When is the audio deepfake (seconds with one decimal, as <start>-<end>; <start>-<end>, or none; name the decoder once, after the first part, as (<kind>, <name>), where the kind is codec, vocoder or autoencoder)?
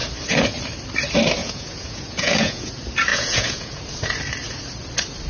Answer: 1.4-2.7 (vocoder, Vocos); 3.1-3.8